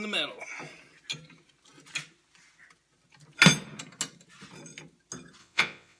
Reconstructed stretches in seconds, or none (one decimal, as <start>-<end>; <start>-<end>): 5.4-6.0